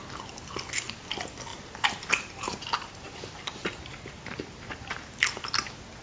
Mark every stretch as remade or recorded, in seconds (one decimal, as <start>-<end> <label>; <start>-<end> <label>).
0.0-1.5 recorded; 1.5-5.1 remade; 5.1-6.0 recorded